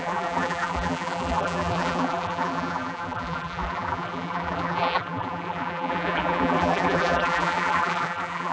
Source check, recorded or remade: remade